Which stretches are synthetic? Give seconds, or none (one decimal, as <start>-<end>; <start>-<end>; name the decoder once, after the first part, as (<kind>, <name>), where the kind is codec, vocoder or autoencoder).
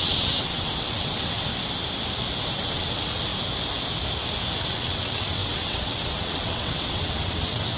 0.0-1.5 (vocoder, WaveNeXt); 2.4-3.3; 4.5-7.8